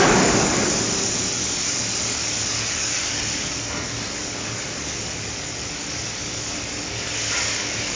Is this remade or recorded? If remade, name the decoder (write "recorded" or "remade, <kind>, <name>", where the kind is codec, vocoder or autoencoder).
remade, codec, DAC